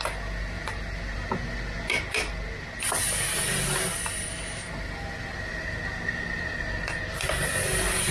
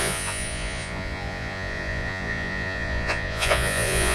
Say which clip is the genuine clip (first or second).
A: first